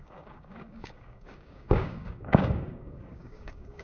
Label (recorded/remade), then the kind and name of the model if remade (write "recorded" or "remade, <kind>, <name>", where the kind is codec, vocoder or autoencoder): remade, codec, DAC